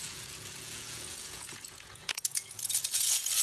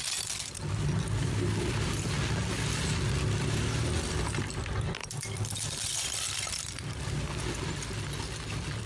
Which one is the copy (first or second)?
first